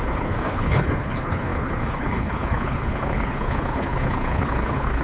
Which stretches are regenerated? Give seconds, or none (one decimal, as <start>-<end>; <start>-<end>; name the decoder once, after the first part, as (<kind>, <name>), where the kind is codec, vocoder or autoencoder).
0.0-5.0 (codec, HILCodec)